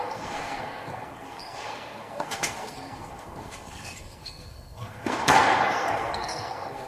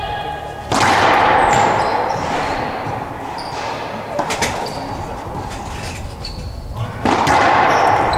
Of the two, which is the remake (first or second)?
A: first